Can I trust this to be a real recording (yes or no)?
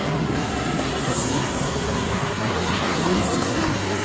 no